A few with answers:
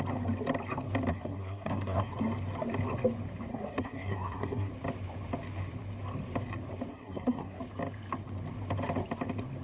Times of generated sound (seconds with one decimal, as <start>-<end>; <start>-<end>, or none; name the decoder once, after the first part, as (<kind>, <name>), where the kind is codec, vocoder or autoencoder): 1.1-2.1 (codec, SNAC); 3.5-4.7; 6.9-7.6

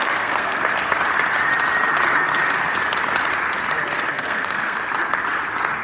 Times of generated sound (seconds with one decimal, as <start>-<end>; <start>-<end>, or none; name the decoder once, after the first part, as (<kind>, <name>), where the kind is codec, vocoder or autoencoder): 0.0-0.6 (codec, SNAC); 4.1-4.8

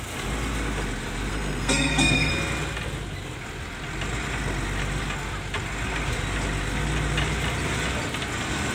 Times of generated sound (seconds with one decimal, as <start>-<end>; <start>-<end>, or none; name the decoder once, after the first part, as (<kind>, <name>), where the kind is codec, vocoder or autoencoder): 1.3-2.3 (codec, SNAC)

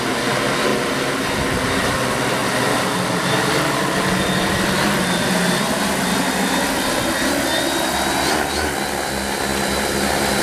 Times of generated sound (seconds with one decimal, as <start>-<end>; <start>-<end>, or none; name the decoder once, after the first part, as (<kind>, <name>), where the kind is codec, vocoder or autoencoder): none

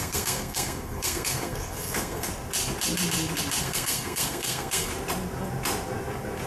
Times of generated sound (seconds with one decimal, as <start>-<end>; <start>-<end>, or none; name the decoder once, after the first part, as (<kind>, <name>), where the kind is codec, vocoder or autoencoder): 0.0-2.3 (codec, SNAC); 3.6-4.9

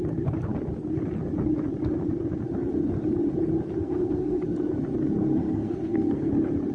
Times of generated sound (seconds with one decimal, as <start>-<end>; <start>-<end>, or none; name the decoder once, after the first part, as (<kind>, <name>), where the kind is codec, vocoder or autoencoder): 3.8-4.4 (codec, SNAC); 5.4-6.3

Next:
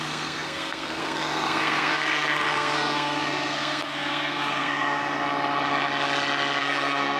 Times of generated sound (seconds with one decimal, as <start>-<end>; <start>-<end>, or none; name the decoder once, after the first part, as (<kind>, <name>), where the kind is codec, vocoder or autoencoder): 0.0-5.0 (codec, SNAC); 6.6-7.2